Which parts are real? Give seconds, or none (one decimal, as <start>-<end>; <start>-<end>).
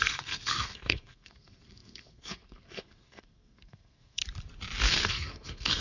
4.2-4.8